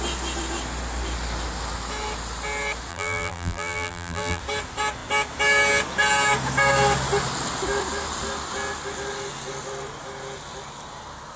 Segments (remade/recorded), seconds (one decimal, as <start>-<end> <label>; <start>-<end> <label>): 0.0-2.9 recorded; 2.9-4.4 remade; 4.4-11.4 recorded